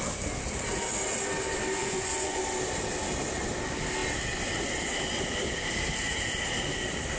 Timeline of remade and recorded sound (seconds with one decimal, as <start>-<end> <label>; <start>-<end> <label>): 0.0-1.8 recorded; 1.8-2.4 remade; 2.4-7.2 recorded